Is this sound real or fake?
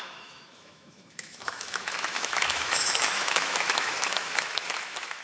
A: fake